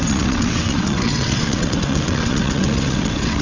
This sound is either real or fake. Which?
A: fake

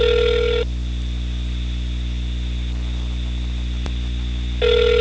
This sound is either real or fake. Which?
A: real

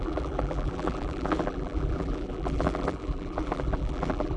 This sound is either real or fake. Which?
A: fake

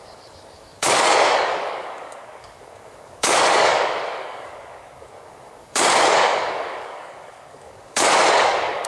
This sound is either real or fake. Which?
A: fake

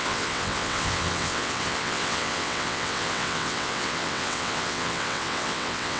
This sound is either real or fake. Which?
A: fake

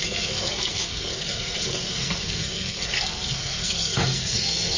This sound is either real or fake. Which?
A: fake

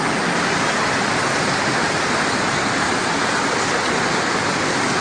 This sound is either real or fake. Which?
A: real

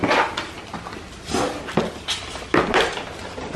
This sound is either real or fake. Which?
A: real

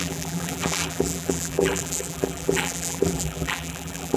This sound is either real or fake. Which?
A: fake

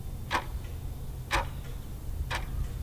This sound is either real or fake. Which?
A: real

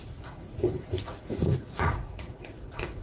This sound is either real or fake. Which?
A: fake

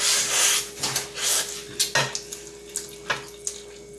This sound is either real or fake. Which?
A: real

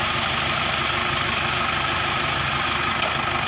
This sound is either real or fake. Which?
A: real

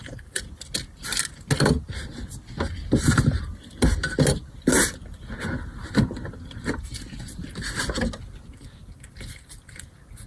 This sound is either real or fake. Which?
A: real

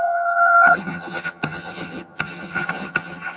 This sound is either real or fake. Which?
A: fake